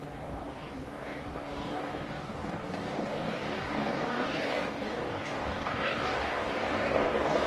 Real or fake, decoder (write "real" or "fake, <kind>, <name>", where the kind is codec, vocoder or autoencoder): fake, codec, DAC